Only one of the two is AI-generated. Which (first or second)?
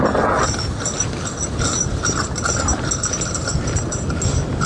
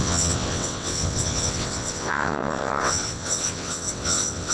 second